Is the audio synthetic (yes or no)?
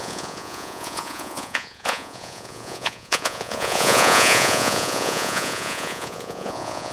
yes